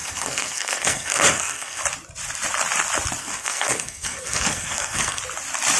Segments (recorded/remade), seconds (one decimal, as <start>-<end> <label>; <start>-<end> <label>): 0.0-1.8 remade; 1.8-3.2 recorded; 3.2-5.2 remade; 5.2-5.8 recorded

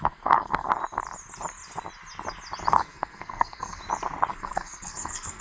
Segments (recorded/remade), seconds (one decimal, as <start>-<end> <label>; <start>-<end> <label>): 0.0-0.7 remade; 0.7-2.7 recorded; 2.7-3.8 remade; 3.8-4.3 recorded; 4.3-5.4 remade

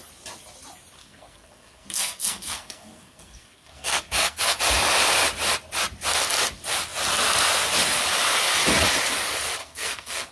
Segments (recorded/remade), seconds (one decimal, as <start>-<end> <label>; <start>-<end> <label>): 0.0-1.0 recorded; 1.0-4.6 remade; 4.6-9.6 recorded; 9.6-10.3 remade

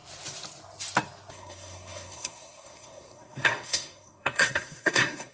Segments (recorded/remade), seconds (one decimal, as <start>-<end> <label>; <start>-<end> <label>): 0.0-1.3 recorded; 1.3-5.3 remade

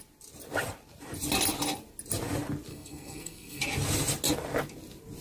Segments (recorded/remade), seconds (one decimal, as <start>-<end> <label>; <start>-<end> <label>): 0.0-2.7 recorded; 2.7-3.6 remade; 3.6-5.2 recorded

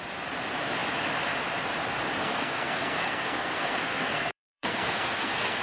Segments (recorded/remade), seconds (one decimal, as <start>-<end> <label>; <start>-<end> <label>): 0.0-2.2 recorded; 2.2-5.6 remade